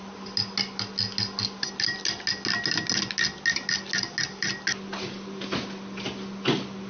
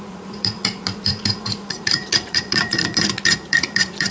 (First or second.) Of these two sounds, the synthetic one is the second